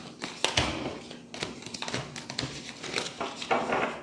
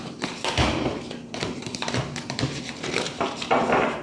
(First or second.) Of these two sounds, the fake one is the second